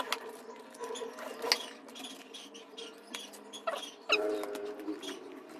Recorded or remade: recorded